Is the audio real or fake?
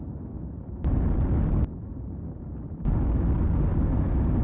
real